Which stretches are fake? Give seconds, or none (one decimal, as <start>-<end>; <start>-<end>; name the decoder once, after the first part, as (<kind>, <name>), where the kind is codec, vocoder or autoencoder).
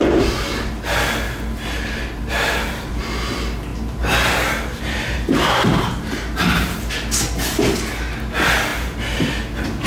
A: 2.2-3.0 (vocoder, BigVGAN v2); 3.7-6.9; 8.7-9.3